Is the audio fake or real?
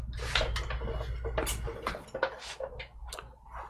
real